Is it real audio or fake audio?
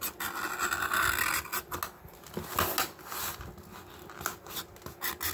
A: real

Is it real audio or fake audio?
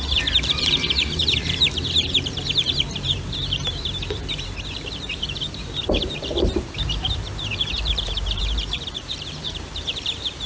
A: fake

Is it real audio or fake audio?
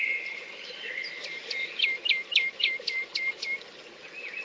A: real